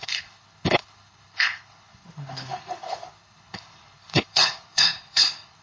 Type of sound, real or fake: fake